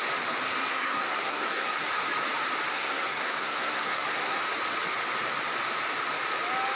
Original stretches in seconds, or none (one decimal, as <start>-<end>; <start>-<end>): 0.0-0.7; 1.9-2.7; 4.4-6.8